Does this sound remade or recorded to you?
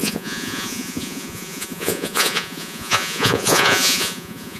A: remade